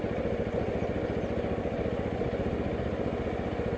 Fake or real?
real